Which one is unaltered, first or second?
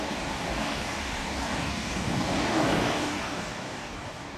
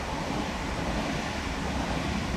second